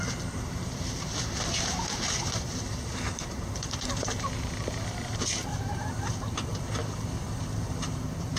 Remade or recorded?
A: remade